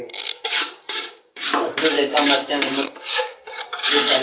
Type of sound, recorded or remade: remade